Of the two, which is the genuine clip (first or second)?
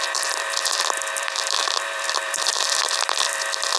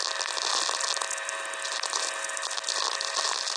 second